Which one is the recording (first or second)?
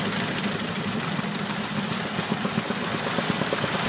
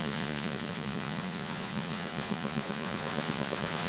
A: first